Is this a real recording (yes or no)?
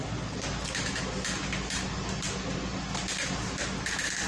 yes